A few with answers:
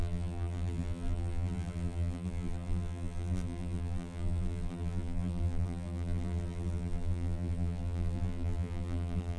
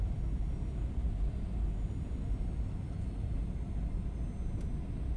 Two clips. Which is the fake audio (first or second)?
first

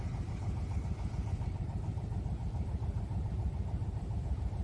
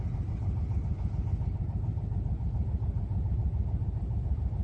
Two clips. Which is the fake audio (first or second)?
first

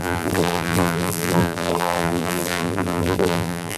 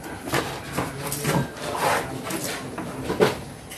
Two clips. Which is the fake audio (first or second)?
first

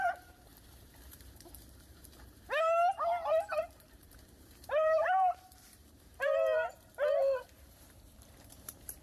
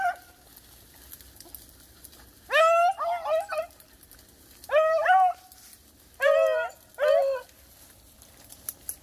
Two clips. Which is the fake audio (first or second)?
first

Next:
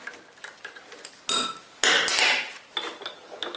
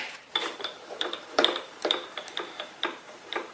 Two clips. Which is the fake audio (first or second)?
second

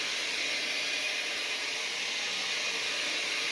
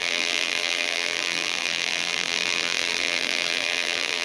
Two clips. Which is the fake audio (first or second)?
second